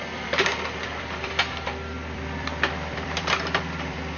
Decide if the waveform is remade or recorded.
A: remade